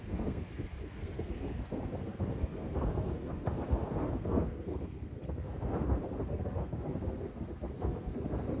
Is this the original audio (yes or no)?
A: no